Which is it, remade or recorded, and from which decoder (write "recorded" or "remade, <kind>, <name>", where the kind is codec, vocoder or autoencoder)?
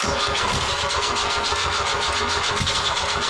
remade, codec, SNAC